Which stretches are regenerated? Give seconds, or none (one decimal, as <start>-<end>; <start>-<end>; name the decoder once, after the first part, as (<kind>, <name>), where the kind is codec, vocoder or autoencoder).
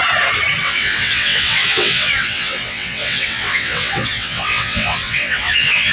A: 0.6-5.9 (vocoder, WaveNeXt)